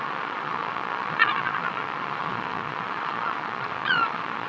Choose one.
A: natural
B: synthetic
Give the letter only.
B